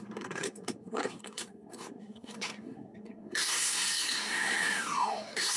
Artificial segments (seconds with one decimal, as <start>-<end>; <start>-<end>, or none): 0.0-5.6